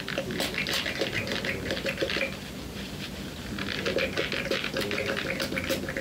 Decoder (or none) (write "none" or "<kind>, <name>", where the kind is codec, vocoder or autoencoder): none